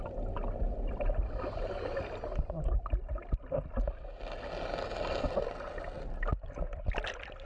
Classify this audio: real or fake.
real